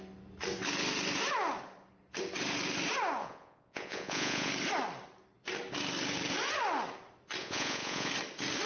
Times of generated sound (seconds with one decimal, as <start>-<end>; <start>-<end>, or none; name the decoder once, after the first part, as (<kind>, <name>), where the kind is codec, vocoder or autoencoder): 3.2-4.5 (vocoder, Vocos); 7.4-8.1